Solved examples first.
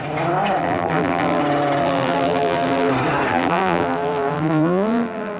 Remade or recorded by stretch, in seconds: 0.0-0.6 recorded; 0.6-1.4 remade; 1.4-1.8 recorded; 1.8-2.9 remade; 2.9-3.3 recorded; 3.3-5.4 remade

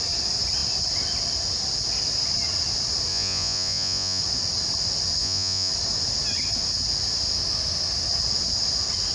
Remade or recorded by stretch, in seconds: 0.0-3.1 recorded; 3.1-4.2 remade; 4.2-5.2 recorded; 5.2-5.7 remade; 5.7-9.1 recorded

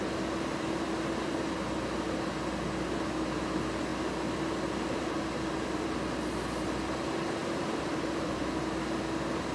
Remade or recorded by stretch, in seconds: 0.0-7.4 recorded; 7.4-8.4 remade; 8.4-9.5 recorded